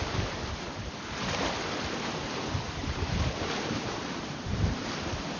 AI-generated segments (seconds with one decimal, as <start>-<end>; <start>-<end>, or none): 2.8-4.9